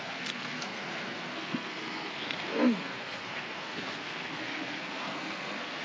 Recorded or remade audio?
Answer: remade